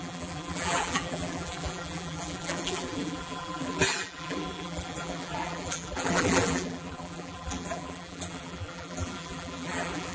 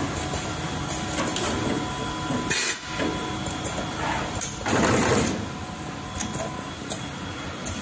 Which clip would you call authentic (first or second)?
second